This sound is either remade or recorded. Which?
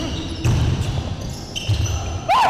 recorded